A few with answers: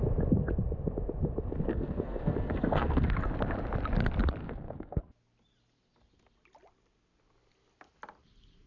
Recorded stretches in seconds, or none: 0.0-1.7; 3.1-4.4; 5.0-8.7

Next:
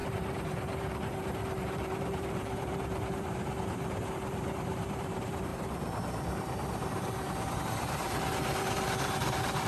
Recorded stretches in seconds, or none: none

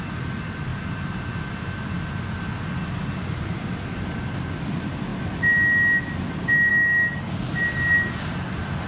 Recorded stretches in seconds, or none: 0.0-6.7; 7.5-8.9

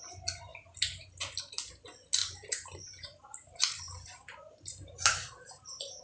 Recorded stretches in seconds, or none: 0.0-2.2

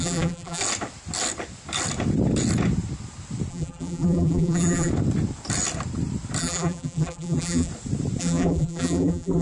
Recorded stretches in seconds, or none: 0.6-3.5; 4.9-6.4; 7.7-8.2

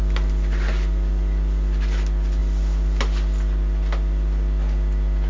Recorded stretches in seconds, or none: 0.0-5.3

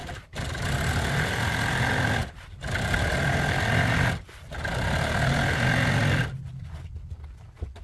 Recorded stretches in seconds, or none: 0.0-7.8

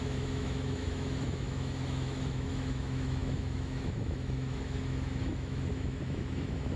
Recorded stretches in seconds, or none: none